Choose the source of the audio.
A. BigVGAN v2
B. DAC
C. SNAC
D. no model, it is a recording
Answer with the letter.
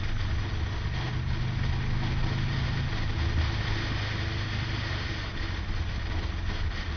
D